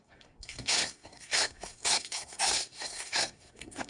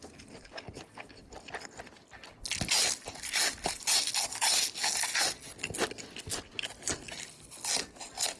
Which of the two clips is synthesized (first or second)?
first